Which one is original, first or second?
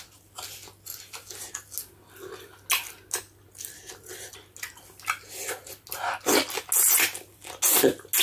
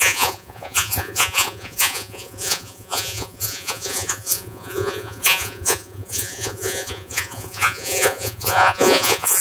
first